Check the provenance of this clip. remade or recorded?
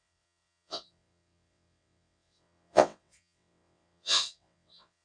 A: remade